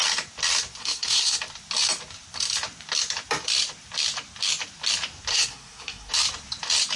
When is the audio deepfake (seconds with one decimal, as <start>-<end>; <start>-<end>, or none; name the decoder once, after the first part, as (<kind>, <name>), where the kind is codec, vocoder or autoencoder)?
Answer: 0.8-1.4 (codec, SNAC); 5.3-6.1

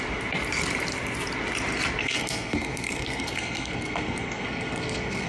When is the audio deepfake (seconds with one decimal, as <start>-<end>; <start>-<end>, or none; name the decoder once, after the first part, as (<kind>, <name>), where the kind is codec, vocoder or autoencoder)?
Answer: 2.0-5.3 (codec, SNAC)

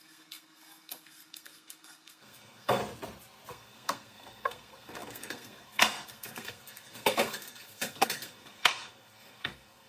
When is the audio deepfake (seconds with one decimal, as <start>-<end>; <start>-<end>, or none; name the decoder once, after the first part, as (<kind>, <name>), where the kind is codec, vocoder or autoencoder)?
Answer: 0.0-2.8 (codec, SNAC); 3.5-9.9

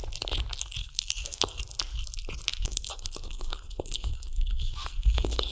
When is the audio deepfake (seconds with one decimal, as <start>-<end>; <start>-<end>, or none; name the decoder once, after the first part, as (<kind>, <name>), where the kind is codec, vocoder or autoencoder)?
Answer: 0.8-1.6 (codec, SNAC); 2.5-5.5

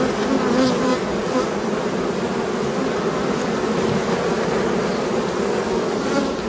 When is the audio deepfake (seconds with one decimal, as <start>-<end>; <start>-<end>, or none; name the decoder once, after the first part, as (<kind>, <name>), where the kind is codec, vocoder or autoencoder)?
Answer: none

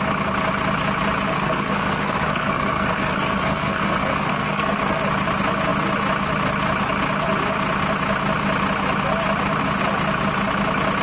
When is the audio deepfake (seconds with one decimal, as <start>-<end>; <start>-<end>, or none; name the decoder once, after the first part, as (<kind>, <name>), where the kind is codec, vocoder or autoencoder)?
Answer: 1.3-5.0 (codec, SNAC)